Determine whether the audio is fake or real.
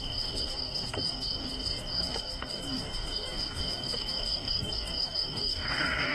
fake